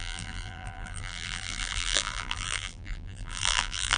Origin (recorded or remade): remade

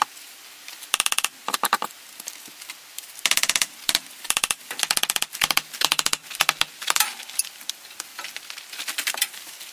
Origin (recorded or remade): recorded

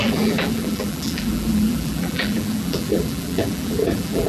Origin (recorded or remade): remade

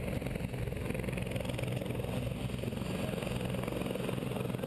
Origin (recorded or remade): recorded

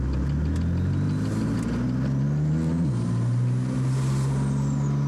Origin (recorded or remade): recorded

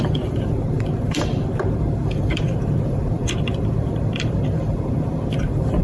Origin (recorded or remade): remade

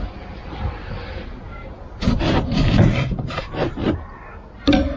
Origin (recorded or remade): recorded